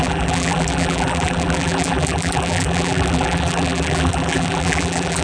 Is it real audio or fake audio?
fake